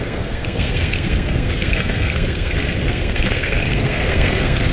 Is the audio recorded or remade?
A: remade